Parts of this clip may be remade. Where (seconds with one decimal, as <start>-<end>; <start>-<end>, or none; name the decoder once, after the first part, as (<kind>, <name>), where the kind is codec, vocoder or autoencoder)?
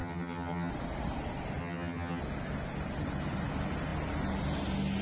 0.0-0.7 (vocoder, HiFi-GAN); 1.6-2.2